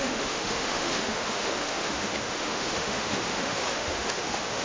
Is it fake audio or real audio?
fake